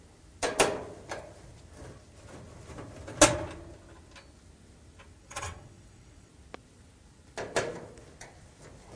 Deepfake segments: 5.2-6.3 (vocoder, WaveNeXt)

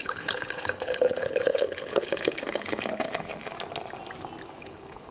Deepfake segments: 0.0-3.3 (codec, HILCodec); 4.6-5.1

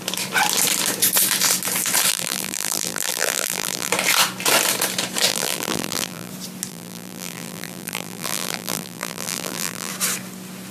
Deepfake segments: 2.1-3.9 (vocoder, BigVGAN v2); 5.3-6.3; 6.7-9.9